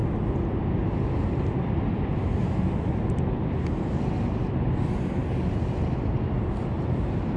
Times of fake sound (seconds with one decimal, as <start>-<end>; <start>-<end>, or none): none